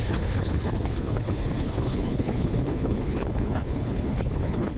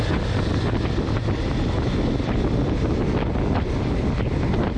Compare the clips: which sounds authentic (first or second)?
second